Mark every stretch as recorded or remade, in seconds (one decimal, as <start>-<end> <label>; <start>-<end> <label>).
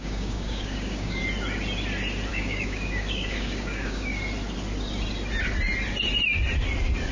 0.0-1.2 remade; 1.2-2.3 recorded; 2.3-4.1 remade; 4.1-7.1 recorded